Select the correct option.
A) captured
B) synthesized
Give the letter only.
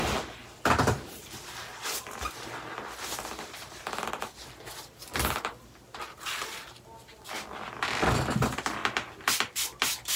A